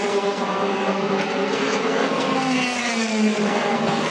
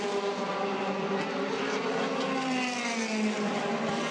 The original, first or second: second